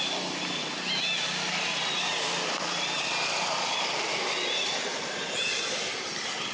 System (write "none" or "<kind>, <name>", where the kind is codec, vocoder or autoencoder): none